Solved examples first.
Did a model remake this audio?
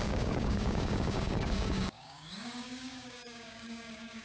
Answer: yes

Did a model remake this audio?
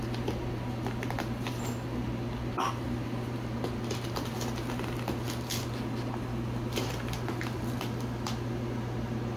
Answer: no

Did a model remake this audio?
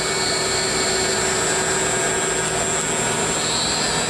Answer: no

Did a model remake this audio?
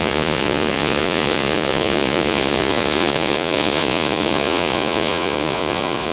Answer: yes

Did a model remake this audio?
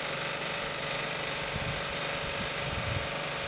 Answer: yes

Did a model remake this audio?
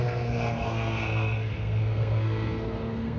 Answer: yes